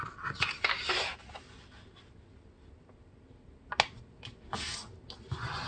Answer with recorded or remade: recorded